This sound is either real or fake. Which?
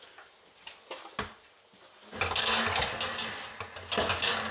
real